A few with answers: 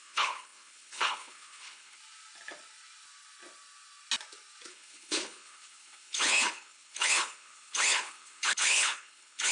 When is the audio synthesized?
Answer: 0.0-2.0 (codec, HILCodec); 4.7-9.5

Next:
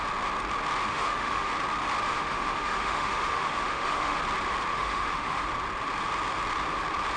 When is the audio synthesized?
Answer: 0.9-1.5 (autoencoder, DAC-VAE); 2.1-4.2; 4.7-5.4

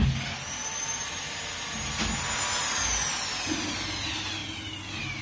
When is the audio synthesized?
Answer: none

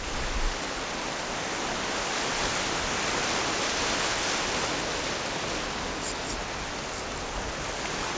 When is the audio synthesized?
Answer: none

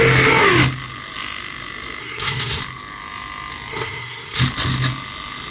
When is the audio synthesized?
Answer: 2.0-2.6 (codec, SNAC); 3.7-4.4